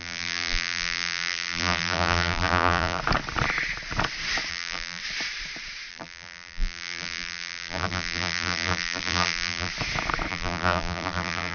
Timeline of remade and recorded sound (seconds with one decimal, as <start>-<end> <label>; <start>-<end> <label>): 0.0-3.0 remade; 3.0-4.5 recorded; 4.5-5.0 remade; 5.0-5.9 recorded; 5.9-9.7 remade; 9.7-10.3 recorded; 10.3-11.5 remade